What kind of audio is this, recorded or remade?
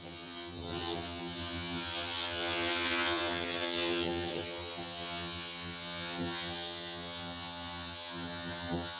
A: remade